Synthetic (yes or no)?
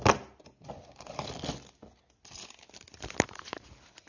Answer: no